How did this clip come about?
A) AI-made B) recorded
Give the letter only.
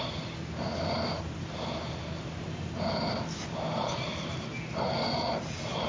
B